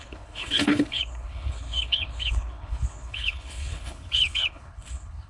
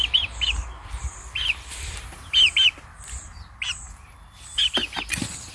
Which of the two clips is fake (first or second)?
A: first